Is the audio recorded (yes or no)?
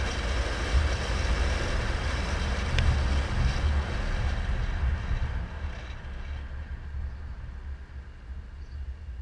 yes